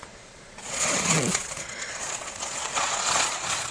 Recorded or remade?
remade